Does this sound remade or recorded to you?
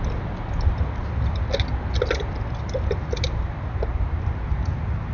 recorded